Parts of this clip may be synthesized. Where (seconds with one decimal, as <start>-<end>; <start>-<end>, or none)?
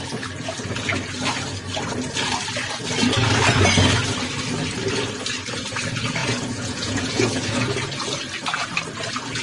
6.2-7.7